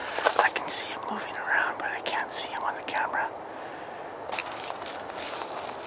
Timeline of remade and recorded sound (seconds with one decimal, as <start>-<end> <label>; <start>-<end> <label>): 0.0-5.9 recorded